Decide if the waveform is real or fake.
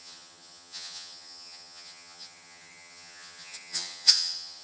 fake